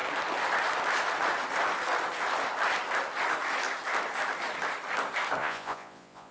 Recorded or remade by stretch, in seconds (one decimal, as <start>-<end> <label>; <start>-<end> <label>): 0.0-5.4 recorded; 5.4-6.3 remade